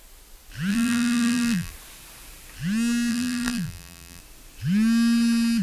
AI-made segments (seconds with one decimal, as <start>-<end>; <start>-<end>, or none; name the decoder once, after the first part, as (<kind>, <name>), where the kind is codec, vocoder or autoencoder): 0.7-1.7 (vocoder, BigVGAN v2); 3.1-4.2